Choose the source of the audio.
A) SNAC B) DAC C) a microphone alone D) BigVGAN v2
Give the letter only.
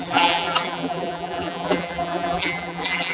D